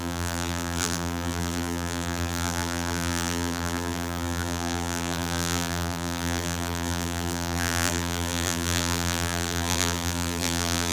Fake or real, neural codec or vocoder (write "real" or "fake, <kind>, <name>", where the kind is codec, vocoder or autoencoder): fake, vocoder, BigVGAN v2